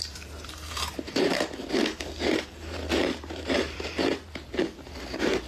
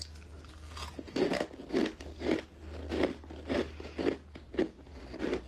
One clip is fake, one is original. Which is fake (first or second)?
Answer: first